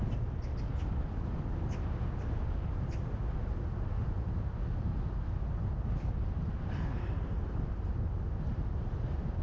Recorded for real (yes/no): yes